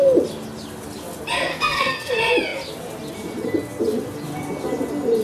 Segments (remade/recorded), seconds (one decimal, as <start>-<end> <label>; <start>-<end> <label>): 0.0-1.5 recorded; 1.5-2.1 remade; 2.1-5.2 recorded